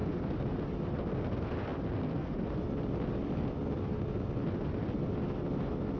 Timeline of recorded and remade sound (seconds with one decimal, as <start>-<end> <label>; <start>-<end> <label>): 0.0-6.0 recorded